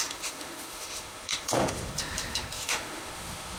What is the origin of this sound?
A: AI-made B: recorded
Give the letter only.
A